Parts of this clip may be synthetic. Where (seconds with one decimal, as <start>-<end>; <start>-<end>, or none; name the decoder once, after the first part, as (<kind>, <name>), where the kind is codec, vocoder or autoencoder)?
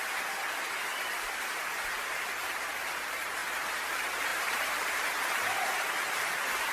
0.9-2.9 (vocoder, BigVGAN v2); 3.4-3.9; 4.3-4.9